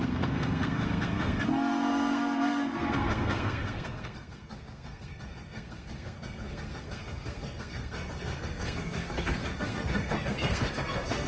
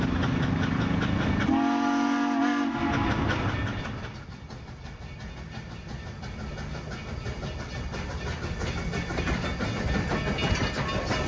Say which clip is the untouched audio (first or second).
second